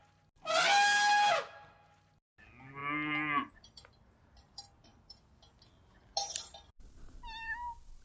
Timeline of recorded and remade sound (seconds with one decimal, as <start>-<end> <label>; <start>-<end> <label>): 0.0-8.0 recorded

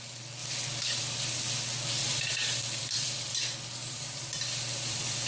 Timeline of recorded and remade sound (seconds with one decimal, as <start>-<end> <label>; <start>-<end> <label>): 0.0-2.0 recorded; 2.0-3.4 remade; 3.4-3.8 recorded; 3.8-5.3 remade

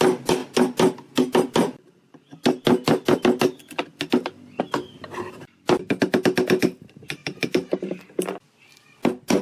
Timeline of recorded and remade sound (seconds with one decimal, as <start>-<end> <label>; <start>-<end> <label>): 0.0-7.2 recorded; 7.2-8.1 remade; 8.1-9.4 recorded

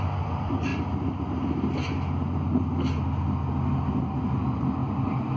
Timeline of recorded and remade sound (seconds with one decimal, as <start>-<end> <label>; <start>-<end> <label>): 0.0-0.7 remade; 0.7-3.9 recorded; 3.9-5.4 remade

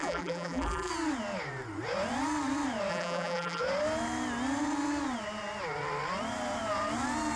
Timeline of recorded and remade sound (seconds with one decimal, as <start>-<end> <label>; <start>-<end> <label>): 0.0-0.9 remade; 0.9-2.9 recorded; 2.9-3.6 remade; 3.6-7.3 recorded

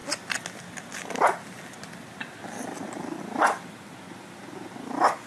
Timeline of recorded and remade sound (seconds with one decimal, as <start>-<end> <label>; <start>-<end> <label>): 0.0-5.3 recorded

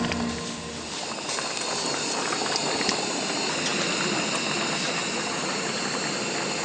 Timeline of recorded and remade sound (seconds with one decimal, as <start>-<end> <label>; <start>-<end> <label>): 0.0-6.6 recorded